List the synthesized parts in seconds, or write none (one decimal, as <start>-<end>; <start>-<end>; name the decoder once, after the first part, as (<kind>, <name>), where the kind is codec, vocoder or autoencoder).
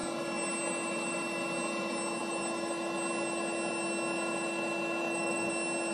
5.0-5.5 (autoencoder, DAC-VAE)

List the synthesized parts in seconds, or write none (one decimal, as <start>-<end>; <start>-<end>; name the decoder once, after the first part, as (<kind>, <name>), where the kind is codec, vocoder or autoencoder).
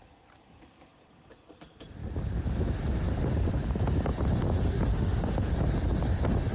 4.9-5.5 (autoencoder, DAC-VAE)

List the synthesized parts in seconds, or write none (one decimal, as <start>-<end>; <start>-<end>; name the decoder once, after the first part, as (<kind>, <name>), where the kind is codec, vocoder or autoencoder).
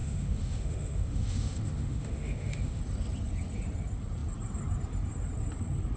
0.0-2.8 (autoencoder, DAC-VAE)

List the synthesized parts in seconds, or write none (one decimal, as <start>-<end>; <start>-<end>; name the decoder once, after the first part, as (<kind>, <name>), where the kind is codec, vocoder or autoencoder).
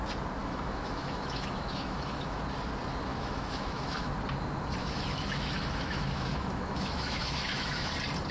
0.4-2.4 (autoencoder, DAC-VAE); 3.1-4.1; 4.8-7.9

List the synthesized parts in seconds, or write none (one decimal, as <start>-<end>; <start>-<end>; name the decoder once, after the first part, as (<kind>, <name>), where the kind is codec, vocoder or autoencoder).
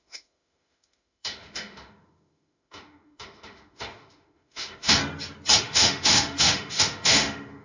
0.0-5.0 (autoencoder, DAC-VAE); 5.6-7.6